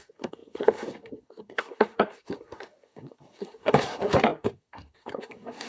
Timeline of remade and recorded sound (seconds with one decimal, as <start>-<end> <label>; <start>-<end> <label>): 0.0-5.7 remade